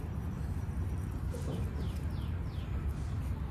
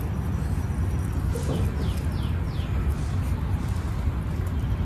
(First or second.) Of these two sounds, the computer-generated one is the first